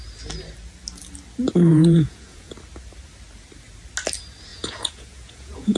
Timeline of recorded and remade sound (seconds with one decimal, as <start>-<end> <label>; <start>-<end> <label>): 0.0-1.7 recorded; 1.7-2.5 remade; 2.5-4.5 recorded; 4.5-5.8 remade